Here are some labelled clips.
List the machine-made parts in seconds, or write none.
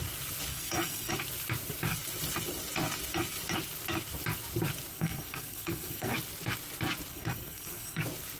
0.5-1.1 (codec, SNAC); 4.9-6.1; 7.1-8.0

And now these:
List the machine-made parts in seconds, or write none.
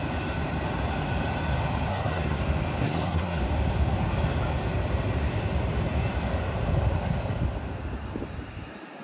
1.9-2.4 (codec, SNAC); 2.8-3.4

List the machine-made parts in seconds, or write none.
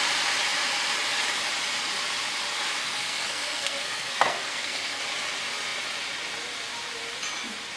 2.8-5.0 (codec, SNAC)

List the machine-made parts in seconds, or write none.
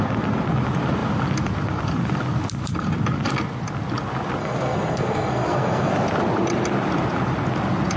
4.4-5.9 (codec, SNAC)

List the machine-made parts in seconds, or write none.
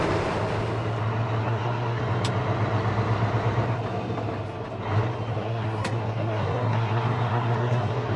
1.4-2.0 (codec, SNAC); 5.3-8.2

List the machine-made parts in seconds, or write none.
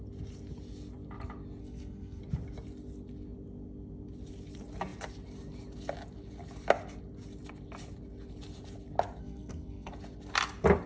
1.6-2.2 (codec, SNAC); 9.2-9.9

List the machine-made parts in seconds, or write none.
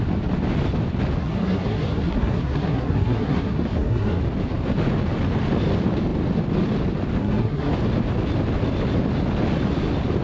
1.2-4.2 (codec, SNAC); 7.2-7.7